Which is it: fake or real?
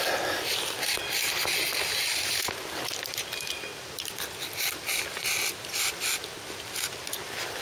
real